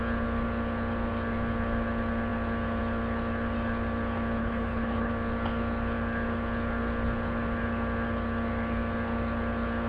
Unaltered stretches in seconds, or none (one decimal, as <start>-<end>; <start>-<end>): 0.0-4.4; 5.1-9.9